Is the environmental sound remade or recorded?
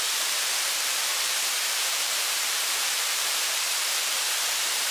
remade